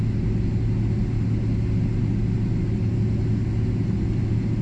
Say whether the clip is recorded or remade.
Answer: recorded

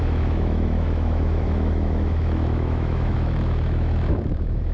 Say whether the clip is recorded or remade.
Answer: remade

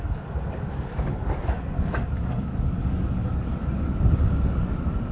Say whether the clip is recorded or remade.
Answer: remade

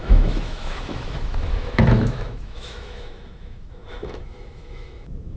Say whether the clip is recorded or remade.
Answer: remade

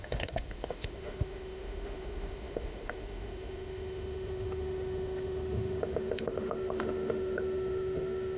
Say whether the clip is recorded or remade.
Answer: remade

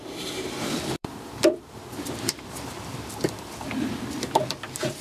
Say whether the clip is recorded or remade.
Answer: remade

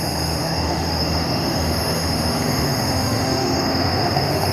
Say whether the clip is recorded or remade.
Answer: remade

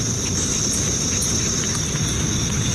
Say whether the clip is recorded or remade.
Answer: recorded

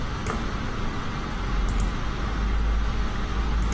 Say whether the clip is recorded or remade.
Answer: recorded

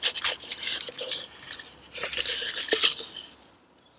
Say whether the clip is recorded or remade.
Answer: recorded